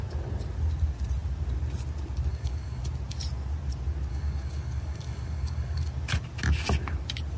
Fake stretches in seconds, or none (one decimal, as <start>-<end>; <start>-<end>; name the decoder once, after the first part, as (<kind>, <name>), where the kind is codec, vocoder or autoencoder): 2.3-2.8 (codec, DAC); 4.1-5.9